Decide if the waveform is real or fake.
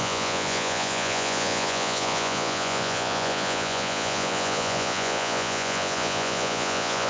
fake